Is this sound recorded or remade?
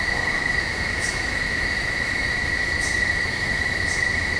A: remade